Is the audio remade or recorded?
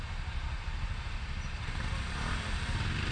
recorded